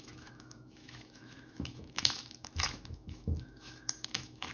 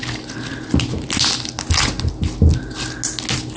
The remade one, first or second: first